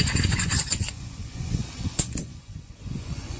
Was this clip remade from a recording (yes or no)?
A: yes